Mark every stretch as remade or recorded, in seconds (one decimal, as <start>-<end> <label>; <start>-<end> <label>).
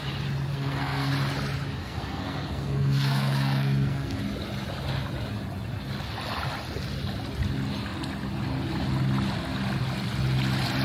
0.0-0.5 recorded; 0.5-1.1 remade; 1.1-1.8 recorded; 1.8-4.2 remade; 4.2-10.8 recorded